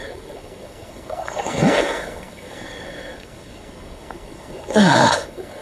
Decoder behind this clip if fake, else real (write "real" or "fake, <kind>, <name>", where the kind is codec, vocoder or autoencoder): fake, codec, SNAC